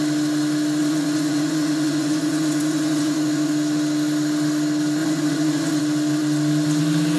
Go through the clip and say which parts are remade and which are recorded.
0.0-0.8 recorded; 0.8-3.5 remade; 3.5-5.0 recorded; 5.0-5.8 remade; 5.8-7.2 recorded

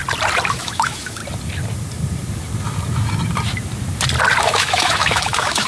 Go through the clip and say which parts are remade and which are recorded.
0.0-0.5 recorded; 0.5-1.2 remade; 1.2-4.4 recorded; 4.4-5.7 remade

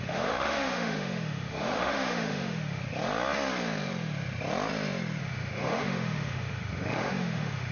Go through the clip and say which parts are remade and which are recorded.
0.0-2.8 remade; 2.8-5.2 recorded; 5.2-7.7 remade

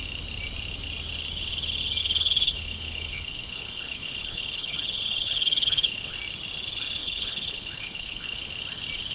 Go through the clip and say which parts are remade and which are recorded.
0.0-2.0 recorded; 2.0-6.1 remade; 6.1-7.0 recorded; 7.0-8.5 remade; 8.5-9.1 recorded

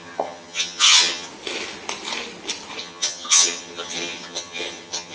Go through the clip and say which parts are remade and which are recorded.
0.0-1.3 remade; 1.3-2.8 recorded; 2.8-5.1 remade

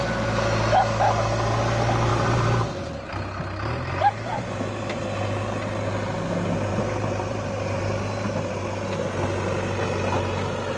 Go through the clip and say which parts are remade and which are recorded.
0.0-2.1 recorded; 2.1-2.7 remade; 2.7-6.7 recorded; 6.7-8.0 remade; 8.0-10.8 recorded

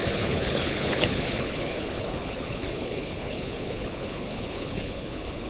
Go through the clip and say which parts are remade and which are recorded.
0.0-5.5 remade

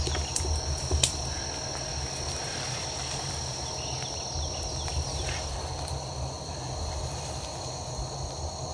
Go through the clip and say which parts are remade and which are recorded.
0.0-8.7 recorded